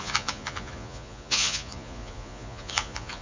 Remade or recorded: remade